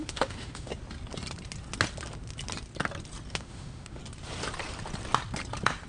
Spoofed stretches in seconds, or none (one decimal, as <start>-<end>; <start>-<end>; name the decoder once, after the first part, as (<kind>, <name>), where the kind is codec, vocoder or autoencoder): 0.0-0.7 (autoencoder, DAC-VAE); 3.3-4.0